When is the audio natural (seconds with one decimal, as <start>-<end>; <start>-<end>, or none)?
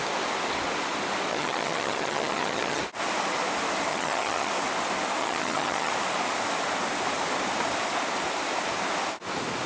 0.0-1.3; 2.8-3.9; 4.5-5.2; 5.9-9.7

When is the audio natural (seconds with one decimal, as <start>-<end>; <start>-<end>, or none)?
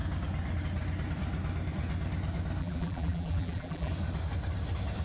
0.0-2.6; 3.9-5.0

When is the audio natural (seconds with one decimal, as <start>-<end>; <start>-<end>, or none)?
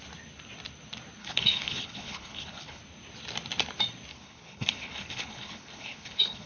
0.0-1.2; 2.8-4.1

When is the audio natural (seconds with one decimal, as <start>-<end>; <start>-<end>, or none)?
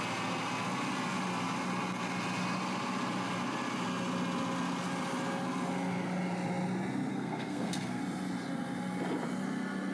0.0-7.1; 8.0-9.9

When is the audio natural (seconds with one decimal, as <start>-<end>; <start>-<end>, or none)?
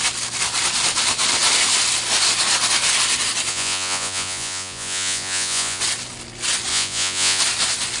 0.0-3.5; 5.8-6.7; 7.4-8.0